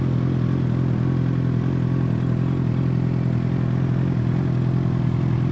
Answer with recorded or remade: recorded